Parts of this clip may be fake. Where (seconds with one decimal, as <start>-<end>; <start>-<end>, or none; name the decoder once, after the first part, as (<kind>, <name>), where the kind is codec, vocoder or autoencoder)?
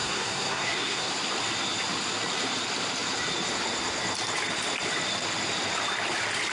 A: 0.0-1.1 (codec, SNAC)